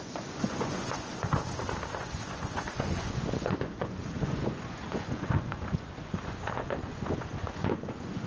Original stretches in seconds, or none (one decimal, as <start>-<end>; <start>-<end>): 1.4-1.9